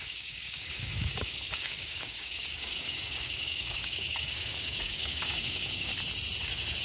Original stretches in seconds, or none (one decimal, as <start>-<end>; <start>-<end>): 5.9-6.8